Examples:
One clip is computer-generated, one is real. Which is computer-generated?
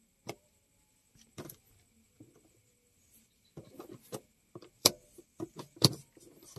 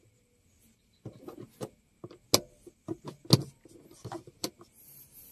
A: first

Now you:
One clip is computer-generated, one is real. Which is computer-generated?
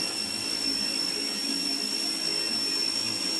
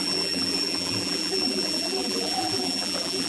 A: second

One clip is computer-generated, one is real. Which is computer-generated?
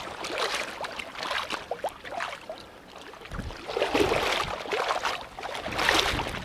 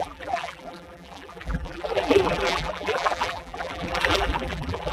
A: second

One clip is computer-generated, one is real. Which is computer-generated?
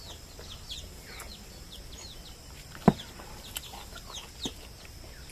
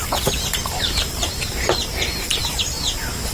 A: second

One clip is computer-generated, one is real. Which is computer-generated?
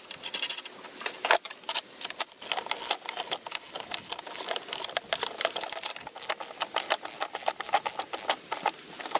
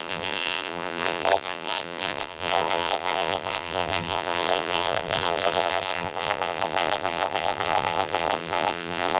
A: second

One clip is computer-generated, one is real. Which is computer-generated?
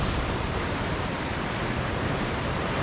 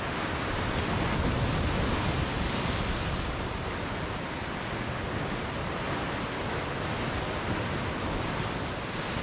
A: first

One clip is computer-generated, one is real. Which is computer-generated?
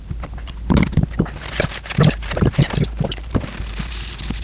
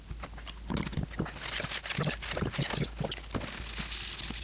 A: first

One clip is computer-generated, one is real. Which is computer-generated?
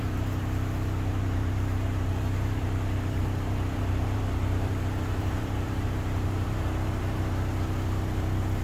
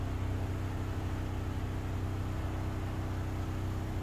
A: first